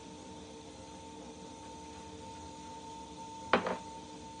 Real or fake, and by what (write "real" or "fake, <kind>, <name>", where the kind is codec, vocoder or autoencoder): real